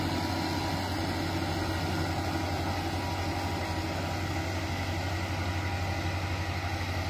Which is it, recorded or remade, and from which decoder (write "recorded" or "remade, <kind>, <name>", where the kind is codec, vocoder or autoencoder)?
recorded